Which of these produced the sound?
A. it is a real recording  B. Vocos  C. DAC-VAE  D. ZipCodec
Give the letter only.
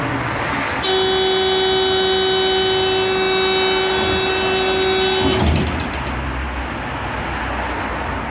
A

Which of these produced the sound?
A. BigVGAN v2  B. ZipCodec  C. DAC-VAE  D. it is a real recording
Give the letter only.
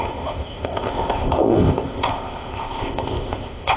B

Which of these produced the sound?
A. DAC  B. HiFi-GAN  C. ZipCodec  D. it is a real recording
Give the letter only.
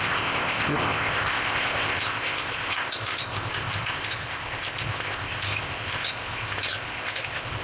C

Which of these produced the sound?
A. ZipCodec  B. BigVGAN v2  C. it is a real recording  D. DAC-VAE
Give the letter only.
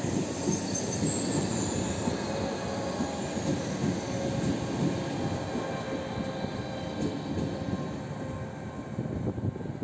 C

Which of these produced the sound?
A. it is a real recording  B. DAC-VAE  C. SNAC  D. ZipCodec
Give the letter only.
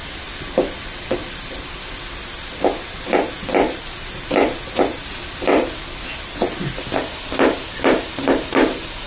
A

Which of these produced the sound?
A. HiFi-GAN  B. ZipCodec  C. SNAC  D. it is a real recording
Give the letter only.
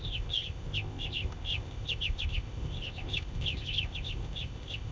B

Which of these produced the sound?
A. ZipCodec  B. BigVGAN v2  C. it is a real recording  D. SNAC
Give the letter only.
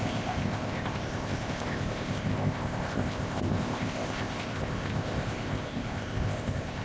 A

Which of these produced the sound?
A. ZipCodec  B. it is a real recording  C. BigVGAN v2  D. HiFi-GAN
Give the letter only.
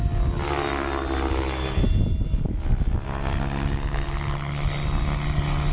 B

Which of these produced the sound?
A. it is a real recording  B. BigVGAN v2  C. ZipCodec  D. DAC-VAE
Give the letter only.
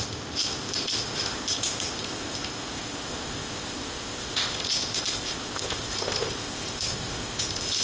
C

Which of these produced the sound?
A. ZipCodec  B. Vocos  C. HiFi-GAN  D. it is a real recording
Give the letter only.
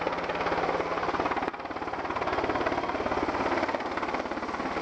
D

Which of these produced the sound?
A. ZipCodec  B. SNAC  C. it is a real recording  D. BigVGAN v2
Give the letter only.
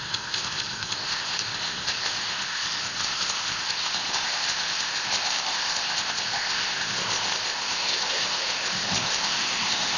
A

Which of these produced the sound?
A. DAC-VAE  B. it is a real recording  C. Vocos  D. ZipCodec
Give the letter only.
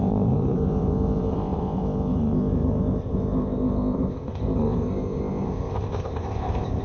D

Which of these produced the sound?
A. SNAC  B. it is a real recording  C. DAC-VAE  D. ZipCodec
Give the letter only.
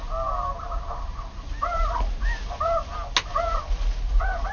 B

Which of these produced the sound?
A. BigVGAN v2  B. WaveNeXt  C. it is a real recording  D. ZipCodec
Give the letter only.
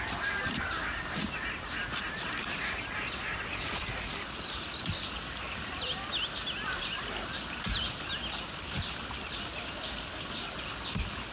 C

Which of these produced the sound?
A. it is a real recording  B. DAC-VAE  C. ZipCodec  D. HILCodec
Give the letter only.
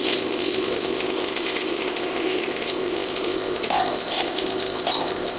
C